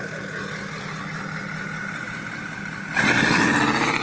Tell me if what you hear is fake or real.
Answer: real